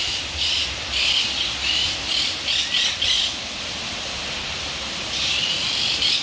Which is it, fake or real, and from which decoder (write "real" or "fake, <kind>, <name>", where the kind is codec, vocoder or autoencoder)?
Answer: real